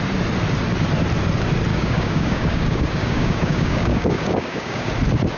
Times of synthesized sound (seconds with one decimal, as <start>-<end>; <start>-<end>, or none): 1.7-4.9